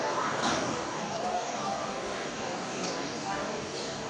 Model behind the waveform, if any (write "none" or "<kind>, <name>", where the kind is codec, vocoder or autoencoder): codec, DAC